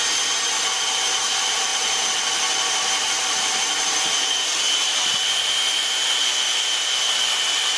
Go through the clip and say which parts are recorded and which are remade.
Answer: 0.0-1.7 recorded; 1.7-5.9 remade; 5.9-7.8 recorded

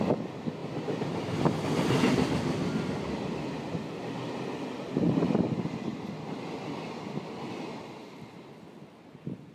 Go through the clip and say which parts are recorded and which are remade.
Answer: 0.0-0.6 recorded; 0.6-1.3 remade; 1.3-9.5 recorded